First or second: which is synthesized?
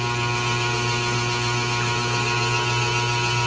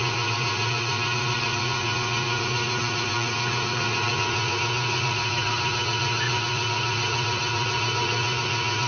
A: second